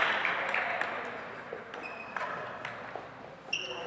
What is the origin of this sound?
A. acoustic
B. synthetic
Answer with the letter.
A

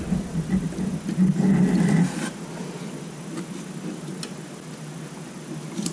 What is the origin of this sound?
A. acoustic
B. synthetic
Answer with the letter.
A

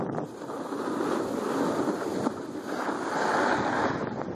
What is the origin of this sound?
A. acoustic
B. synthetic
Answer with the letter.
A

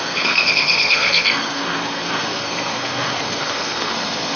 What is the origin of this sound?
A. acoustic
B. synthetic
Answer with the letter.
B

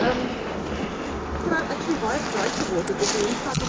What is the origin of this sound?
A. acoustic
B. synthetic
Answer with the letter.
A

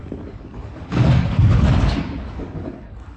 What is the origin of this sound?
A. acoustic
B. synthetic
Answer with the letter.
B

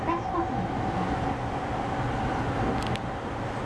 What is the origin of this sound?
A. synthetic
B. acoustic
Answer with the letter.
B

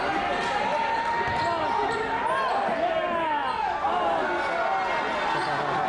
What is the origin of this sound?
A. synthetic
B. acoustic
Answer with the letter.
B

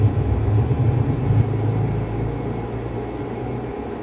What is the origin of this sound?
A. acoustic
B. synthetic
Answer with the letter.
A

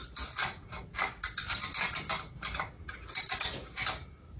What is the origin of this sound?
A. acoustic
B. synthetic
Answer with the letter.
A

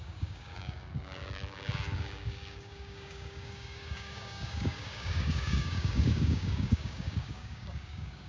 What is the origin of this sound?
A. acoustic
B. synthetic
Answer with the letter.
B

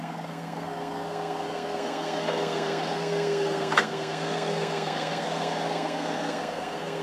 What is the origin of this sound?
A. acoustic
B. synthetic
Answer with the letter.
B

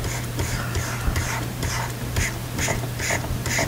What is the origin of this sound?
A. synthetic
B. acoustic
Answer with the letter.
A